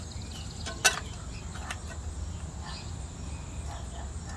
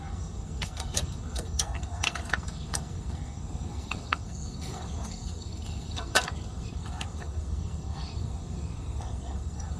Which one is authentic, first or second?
first